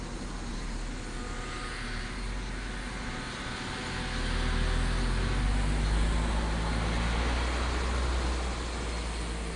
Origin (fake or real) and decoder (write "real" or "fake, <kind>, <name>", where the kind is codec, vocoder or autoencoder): real